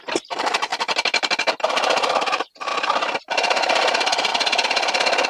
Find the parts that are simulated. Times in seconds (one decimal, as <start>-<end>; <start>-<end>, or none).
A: 0.0-0.7; 1.7-2.7; 3.2-4.3